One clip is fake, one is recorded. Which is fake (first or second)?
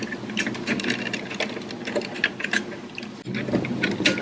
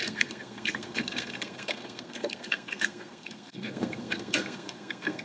second